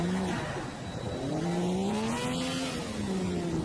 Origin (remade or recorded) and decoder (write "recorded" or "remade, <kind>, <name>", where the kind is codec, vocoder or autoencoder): recorded